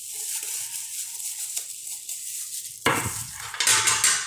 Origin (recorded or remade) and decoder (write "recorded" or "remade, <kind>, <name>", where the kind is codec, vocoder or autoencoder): recorded